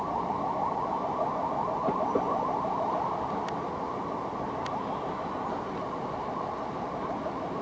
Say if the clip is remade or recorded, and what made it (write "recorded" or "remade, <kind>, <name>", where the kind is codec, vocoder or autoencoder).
recorded